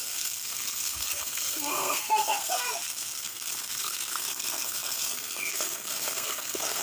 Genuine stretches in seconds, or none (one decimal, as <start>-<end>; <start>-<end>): none